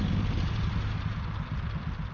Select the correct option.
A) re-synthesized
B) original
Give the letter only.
B